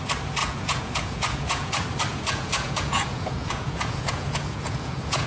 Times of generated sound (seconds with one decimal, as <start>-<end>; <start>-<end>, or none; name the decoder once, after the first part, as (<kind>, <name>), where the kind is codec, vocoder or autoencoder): 0.4-1.7 (vocoder, Vocos); 2.1-5.3